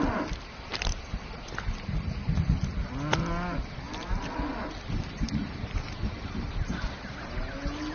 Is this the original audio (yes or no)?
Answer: yes